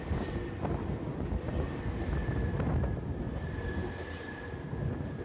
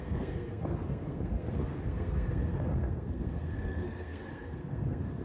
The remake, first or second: second